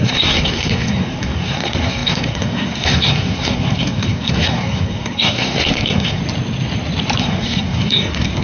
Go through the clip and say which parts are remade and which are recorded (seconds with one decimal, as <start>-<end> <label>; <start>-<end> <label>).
0.0-6.2 remade; 6.2-7.2 recorded; 7.2-8.4 remade